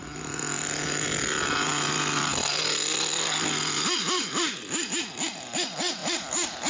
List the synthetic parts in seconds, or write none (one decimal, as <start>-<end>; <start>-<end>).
none